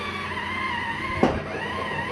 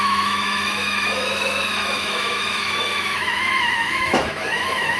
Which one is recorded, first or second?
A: first